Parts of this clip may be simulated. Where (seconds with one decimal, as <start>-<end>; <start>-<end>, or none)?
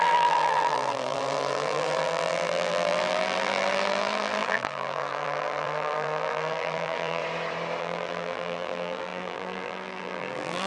0.0-7.2; 7.8-10.7